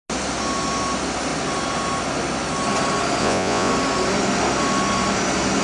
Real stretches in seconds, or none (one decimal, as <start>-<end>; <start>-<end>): 0.0-3.2; 3.7-5.6